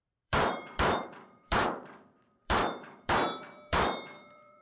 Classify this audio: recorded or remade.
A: remade